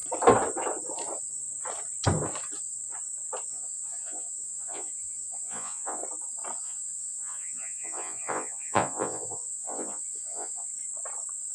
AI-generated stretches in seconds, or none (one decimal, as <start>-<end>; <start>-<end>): 3.5-6.0; 6.6-10.7